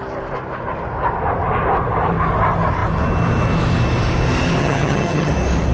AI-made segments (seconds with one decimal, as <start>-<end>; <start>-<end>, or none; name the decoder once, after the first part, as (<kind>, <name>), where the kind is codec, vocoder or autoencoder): 4.6-5.3 (vocoder, HiFi-GAN)